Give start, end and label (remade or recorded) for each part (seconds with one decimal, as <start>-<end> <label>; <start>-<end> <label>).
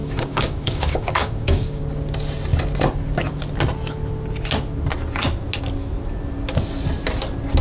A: 0.0-1.8 remade; 1.8-7.6 recorded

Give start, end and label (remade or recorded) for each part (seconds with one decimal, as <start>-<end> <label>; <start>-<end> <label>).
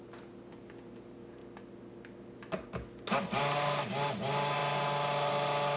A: 0.0-5.8 recorded